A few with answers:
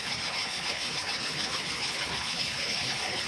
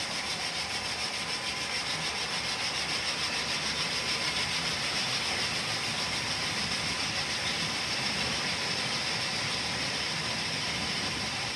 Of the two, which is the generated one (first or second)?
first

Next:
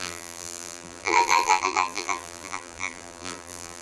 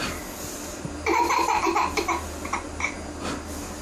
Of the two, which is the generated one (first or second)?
first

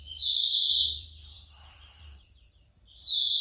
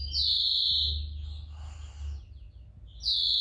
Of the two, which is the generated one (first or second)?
first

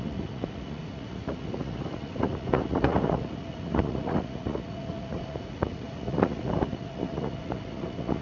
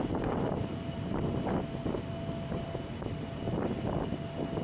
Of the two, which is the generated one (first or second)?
first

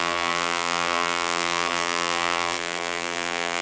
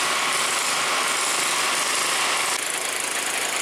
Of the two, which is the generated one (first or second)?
first